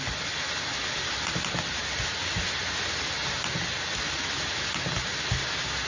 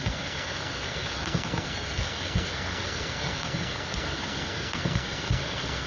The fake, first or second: second